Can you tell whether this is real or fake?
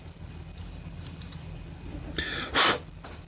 real